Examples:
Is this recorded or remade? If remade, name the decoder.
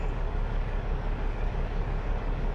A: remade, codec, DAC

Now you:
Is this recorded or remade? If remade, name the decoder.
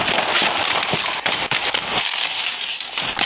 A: recorded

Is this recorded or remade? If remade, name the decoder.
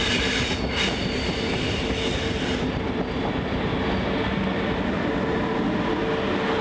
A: recorded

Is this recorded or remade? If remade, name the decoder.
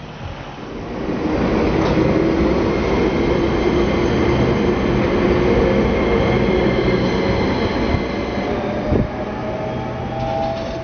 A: recorded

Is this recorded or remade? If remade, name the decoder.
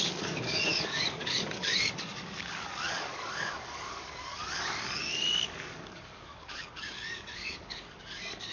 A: remade, codec, DAC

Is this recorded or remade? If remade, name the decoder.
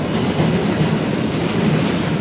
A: recorded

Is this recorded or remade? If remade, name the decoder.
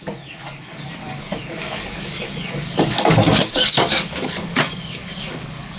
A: remade, codec, DAC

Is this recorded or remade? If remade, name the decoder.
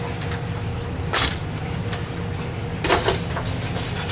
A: recorded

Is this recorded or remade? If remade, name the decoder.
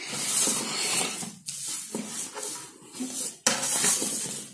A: recorded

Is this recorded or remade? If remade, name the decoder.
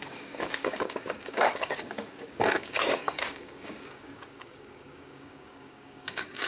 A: remade, codec, DAC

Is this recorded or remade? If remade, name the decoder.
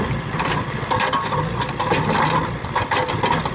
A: recorded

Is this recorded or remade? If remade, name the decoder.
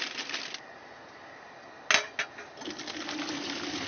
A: recorded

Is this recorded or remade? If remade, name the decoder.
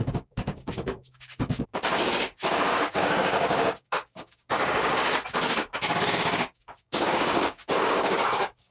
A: remade, codec, DAC